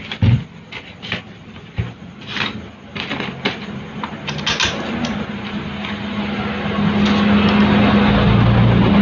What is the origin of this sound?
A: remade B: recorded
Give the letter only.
B